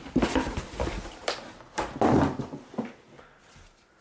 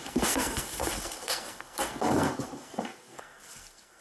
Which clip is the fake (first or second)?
second